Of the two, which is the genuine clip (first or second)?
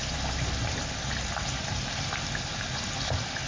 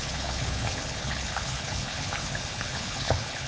first